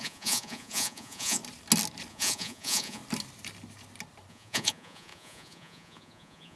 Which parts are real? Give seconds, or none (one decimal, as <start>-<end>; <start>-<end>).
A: 1.4-2.1; 3.0-4.3